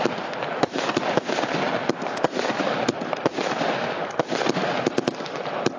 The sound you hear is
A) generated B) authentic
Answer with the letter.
B